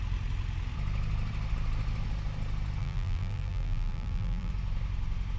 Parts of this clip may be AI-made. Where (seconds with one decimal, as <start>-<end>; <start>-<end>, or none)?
2.8-4.5